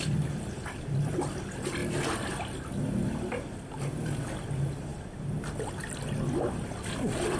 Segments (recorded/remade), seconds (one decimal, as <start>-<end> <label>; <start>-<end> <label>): 0.0-7.4 recorded